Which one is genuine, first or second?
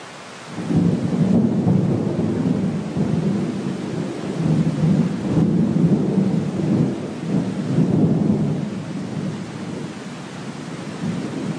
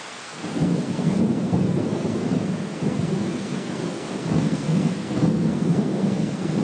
first